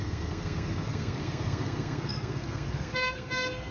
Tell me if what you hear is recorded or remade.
remade